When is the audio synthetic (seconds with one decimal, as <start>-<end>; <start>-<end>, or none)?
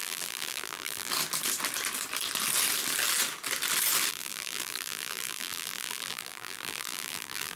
0.0-1.1; 4.1-7.6